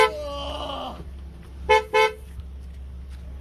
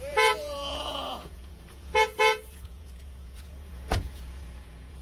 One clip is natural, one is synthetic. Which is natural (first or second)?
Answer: first